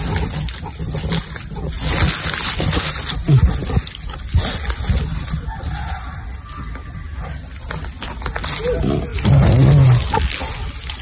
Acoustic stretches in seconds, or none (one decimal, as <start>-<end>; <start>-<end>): 0.0-11.0